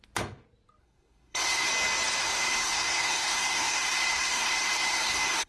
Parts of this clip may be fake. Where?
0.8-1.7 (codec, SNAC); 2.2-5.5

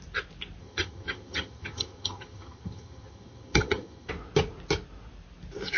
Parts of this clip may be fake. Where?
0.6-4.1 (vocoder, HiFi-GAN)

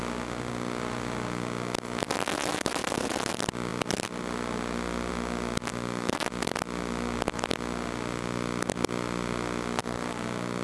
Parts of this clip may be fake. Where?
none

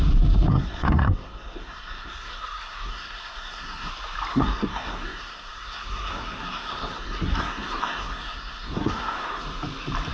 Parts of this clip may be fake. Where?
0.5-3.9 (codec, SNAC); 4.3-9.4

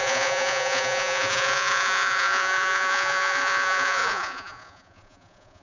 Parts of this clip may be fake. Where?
0.0-5.6 (vocoder, Vocos)